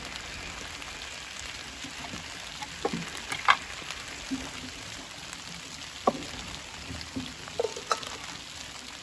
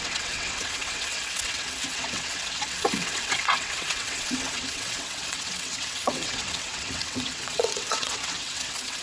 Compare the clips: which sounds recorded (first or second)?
first